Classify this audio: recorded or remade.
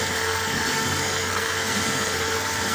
remade